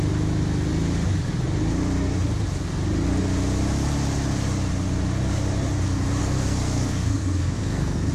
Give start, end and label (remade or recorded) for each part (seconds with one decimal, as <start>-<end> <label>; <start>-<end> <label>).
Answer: 0.0-6.2 recorded; 6.2-8.1 remade